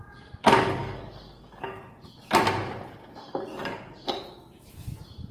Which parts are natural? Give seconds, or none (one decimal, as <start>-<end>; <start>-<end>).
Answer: 0.0-0.8; 1.8-3.2; 4.2-5.3